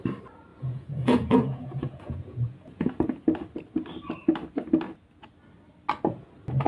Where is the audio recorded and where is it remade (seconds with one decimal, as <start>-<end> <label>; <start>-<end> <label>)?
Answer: 0.0-0.5 recorded; 0.5-2.9 remade; 2.9-6.7 recorded